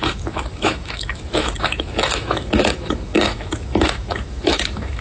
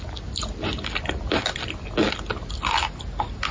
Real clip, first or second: second